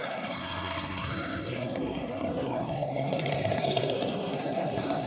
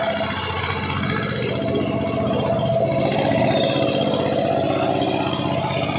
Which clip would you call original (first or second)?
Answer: second